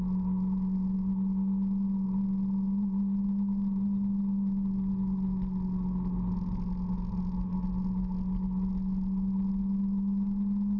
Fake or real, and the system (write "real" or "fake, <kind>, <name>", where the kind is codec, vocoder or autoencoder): real